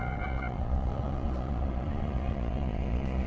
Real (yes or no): no